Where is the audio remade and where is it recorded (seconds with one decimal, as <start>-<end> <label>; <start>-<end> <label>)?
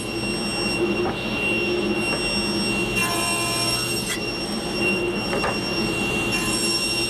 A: 0.0-3.0 recorded; 3.0-7.1 remade